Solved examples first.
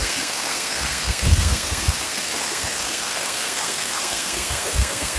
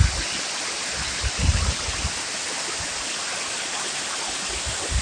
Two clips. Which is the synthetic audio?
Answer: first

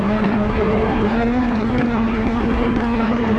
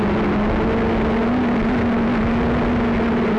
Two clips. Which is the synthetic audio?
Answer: first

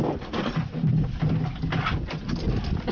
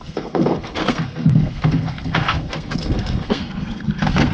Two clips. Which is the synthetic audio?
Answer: second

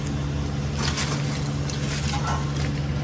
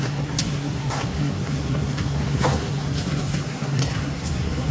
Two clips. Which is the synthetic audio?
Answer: second